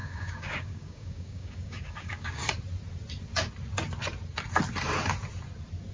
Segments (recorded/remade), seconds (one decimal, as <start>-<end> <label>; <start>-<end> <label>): 0.0-2.4 remade; 2.4-5.9 recorded